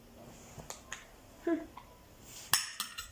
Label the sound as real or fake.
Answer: real